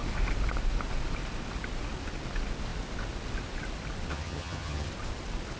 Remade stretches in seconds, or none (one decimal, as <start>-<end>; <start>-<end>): 4.1-4.9